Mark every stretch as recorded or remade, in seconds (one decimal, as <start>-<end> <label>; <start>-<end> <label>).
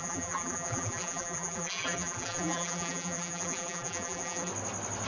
0.0-4.5 remade; 4.5-5.1 recorded